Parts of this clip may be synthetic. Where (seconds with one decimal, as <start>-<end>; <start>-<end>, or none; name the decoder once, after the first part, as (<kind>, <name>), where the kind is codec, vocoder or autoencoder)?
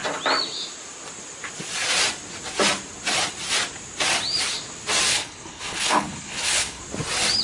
5.1-6.8 (codec, HILCodec)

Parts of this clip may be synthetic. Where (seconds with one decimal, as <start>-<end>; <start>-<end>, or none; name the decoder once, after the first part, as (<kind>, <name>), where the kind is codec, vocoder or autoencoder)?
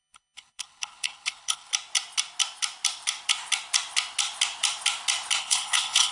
0.0-1.7 (codec, HILCodec); 5.4-6.1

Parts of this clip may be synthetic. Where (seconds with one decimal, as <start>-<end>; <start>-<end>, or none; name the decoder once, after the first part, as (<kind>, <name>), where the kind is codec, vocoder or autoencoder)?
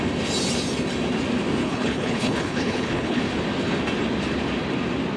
1.6-3.2 (codec, HILCodec)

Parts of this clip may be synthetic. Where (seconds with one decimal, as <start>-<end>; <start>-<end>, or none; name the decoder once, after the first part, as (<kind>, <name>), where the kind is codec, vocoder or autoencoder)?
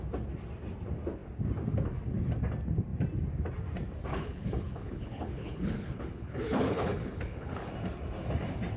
4.1-7.7 (codec, HILCodec)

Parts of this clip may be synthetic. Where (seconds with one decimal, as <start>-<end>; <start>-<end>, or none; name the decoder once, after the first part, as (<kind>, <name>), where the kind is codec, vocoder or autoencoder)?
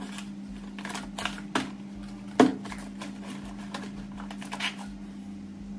none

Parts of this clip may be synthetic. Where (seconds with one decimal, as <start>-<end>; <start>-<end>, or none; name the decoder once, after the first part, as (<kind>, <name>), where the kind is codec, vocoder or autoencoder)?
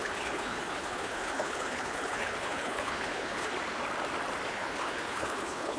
0.0-3.5 (codec, HILCodec); 4.5-5.8